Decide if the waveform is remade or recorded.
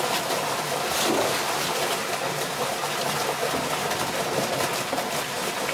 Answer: recorded